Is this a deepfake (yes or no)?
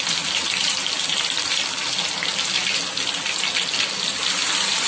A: no